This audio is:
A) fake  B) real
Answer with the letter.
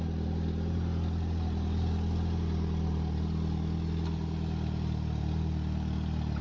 B